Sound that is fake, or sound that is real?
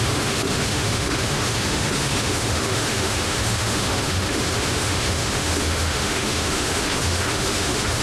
fake